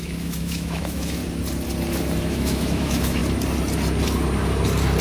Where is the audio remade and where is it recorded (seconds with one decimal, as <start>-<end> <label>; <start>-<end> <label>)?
0.0-1.2 remade; 1.2-2.2 recorded; 2.2-3.2 remade; 3.2-5.0 recorded